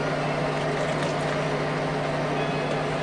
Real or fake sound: real